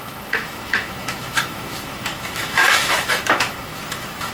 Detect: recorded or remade remade